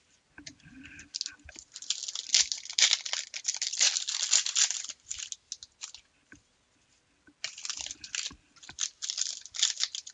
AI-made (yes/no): no